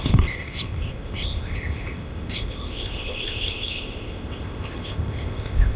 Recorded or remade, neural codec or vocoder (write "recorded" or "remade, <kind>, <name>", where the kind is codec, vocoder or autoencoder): remade, codec, ZipCodec